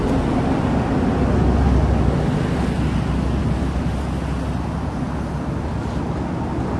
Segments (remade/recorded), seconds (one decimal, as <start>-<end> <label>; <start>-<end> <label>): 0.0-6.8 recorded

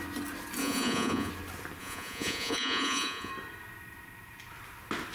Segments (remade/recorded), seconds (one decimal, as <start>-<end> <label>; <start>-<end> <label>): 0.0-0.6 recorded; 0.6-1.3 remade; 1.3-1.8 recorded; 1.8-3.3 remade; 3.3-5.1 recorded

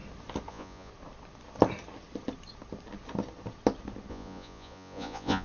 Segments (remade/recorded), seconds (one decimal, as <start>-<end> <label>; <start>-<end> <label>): 0.0-0.5 recorded; 0.5-0.9 remade; 0.9-4.1 recorded; 4.1-5.4 remade

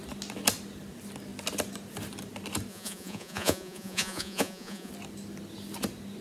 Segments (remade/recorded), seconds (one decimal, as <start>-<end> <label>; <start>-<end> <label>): 0.0-2.7 recorded; 2.7-4.9 remade; 4.9-6.2 recorded